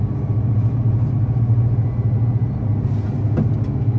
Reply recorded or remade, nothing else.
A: recorded